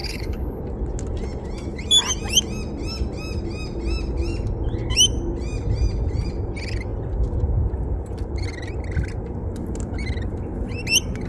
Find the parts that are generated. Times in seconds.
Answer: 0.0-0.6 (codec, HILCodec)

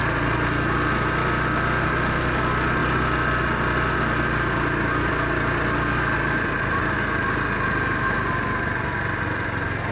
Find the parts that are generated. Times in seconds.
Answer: none

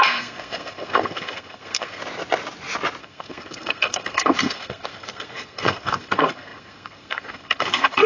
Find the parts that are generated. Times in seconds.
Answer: 0.0-2.0 (codec, SNAC); 3.0-8.1

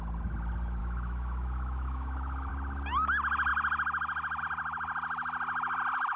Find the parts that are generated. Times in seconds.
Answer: 0.8-2.5 (autoencoder, DAC-VAE)

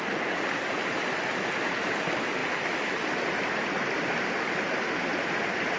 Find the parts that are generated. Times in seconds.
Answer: none

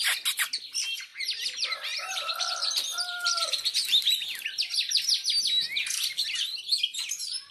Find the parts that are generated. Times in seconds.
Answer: 1.1-4.4 (vocoder, BigVGAN v2)